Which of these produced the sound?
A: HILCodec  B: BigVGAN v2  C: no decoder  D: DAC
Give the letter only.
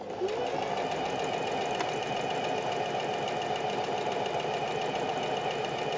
C